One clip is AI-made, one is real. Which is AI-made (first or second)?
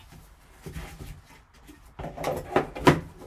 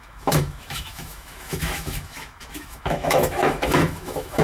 second